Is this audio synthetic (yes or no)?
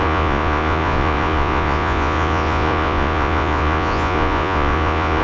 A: yes